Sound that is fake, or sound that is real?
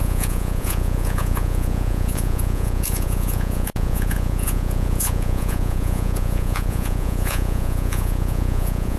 fake